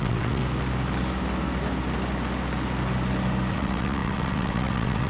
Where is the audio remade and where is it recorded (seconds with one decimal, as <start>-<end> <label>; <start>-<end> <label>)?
0.0-0.4 remade; 0.4-3.5 recorded; 3.5-5.1 remade